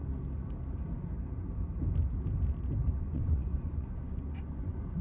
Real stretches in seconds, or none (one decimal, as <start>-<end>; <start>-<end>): 0.0-3.0